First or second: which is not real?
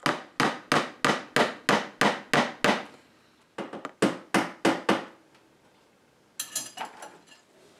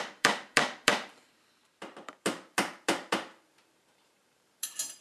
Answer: second